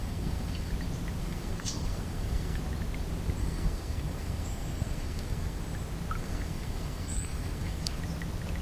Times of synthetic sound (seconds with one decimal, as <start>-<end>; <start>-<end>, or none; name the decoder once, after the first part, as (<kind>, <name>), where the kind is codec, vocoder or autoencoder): 0.0-0.7 (codec, SNAC); 1.2-2.6; 3.4-5.6; 6.2-8.0